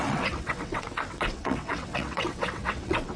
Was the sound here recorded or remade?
remade